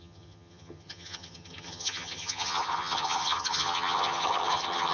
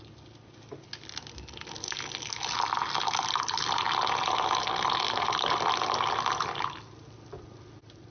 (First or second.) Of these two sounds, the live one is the second